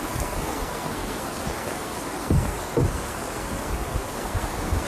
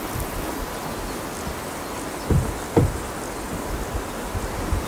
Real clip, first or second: second